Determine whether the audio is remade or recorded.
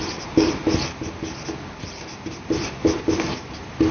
recorded